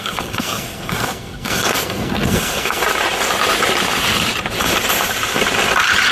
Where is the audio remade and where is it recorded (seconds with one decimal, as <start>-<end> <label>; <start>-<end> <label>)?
0.0-2.8 remade; 2.8-6.1 recorded